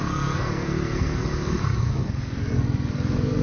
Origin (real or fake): fake